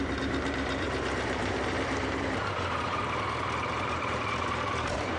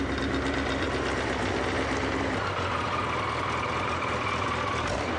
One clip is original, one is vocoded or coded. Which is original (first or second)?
second